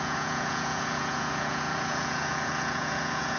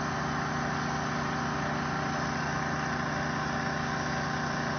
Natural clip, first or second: second